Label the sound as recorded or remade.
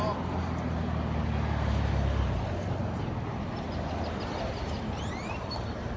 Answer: recorded